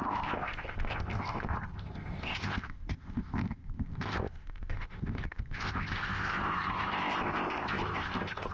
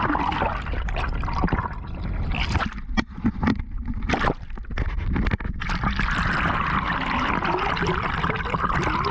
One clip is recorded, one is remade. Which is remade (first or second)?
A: first